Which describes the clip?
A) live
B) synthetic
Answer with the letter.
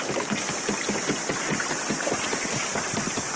B